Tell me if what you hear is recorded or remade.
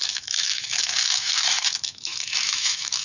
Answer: remade